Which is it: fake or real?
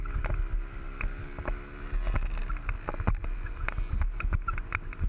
real